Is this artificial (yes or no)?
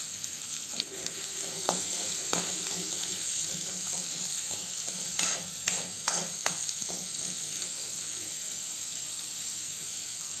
yes